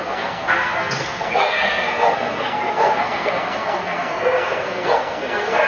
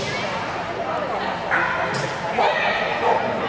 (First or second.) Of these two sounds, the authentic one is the second